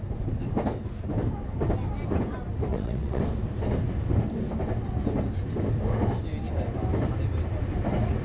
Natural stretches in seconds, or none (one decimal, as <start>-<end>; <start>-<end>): 0.0-2.7; 3.2-8.2